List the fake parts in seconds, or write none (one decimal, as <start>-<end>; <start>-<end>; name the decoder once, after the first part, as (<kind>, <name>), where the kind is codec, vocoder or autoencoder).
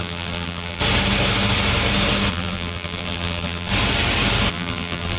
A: 0.0-0.8 (vocoder, BigVGAN v2); 2.3-3.7; 4.5-5.2